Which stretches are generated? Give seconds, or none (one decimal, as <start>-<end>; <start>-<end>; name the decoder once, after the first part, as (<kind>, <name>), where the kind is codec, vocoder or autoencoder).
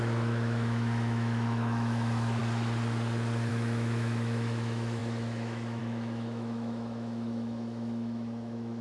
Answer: 0.0-2.4 (autoencoder, DAC-VAE); 3.5-8.8